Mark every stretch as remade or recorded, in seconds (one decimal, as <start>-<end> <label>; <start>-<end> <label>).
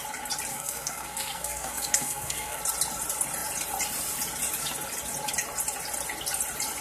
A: 0.0-0.5 recorded; 0.5-2.6 remade; 2.6-6.8 recorded